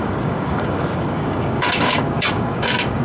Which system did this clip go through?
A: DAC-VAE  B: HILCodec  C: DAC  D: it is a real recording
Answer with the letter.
C